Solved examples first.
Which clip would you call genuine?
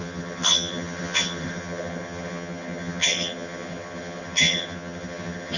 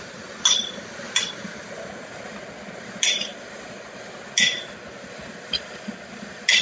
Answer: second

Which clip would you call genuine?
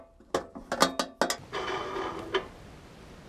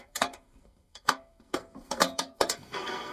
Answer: first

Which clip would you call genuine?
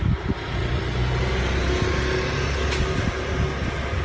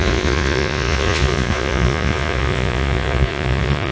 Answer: first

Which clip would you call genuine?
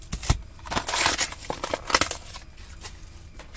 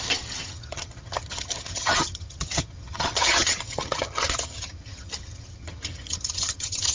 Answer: first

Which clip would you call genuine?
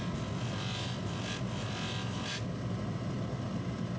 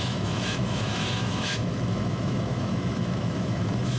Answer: first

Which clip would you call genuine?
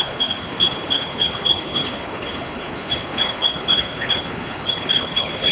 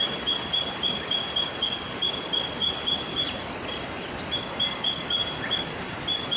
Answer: second